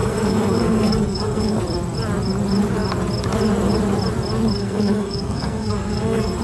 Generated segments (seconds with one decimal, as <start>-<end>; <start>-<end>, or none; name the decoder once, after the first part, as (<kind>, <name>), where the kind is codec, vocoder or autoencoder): 0.0-1.6 (codec, SNAC); 4.6-6.4